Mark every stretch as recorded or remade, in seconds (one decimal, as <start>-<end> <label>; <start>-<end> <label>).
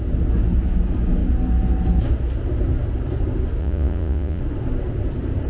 0.0-3.6 recorded; 3.6-4.4 remade; 4.4-5.5 recorded